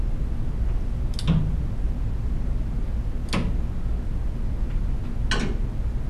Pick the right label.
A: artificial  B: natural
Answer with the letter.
B